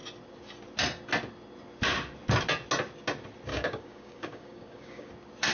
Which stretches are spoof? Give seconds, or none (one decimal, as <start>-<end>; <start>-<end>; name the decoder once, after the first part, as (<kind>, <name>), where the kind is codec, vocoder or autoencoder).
3.5-5.1 (codec, DAC)